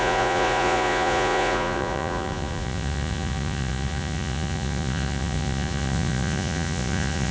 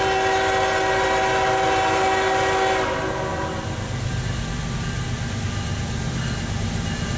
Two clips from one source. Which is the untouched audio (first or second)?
second